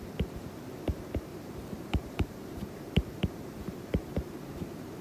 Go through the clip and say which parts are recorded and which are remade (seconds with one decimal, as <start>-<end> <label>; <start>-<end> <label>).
0.0-1.3 recorded; 1.3-4.3 remade; 4.3-5.0 recorded